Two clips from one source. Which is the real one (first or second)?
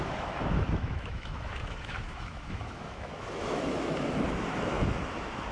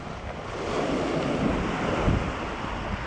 second